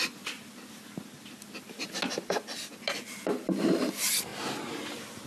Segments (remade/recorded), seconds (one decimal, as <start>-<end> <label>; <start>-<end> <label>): 0.0-5.3 recorded